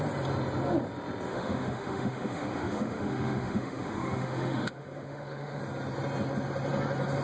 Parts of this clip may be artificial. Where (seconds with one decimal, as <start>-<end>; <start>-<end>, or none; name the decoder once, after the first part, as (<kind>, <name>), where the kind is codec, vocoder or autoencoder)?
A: 1.3-5.6 (autoencoder, DAC-VAE)